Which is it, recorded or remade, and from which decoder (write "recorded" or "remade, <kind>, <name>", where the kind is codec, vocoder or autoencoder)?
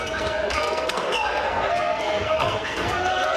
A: remade, codec, SNAC